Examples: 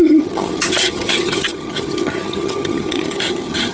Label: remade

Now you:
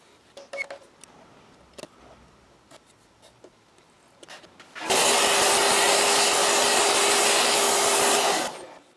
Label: recorded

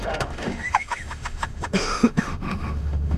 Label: remade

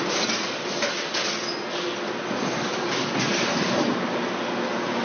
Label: recorded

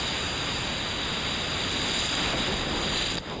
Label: recorded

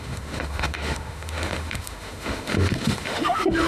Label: remade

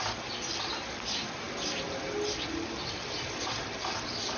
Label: recorded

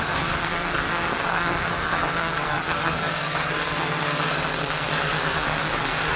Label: remade